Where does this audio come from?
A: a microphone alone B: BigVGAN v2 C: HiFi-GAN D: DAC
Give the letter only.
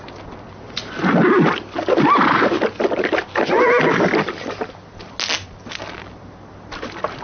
A